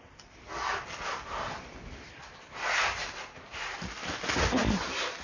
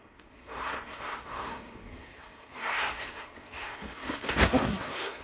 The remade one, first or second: second